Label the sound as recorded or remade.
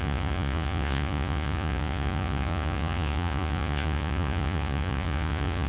remade